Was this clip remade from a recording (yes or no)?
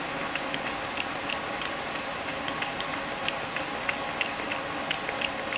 no